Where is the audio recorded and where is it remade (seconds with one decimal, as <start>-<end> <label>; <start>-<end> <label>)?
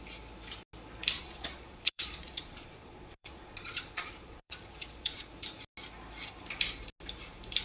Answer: 0.0-1.1 recorded; 1.1-5.3 remade; 5.3-7.6 recorded